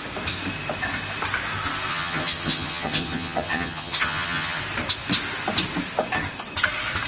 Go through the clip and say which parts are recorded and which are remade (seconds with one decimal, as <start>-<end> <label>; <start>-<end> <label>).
0.0-1.9 recorded; 1.9-4.6 remade; 4.6-7.1 recorded